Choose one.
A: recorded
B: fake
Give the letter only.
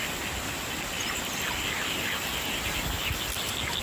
A